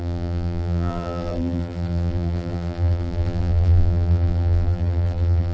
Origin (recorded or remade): remade